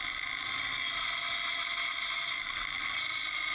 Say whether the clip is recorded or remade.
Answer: recorded